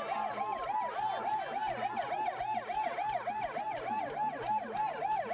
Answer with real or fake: real